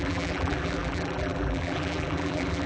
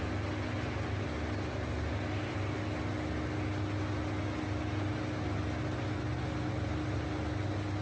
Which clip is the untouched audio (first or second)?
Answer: second